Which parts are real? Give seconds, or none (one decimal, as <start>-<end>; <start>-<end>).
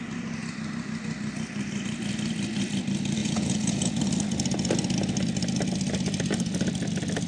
0.0-3.2; 4.0-7.3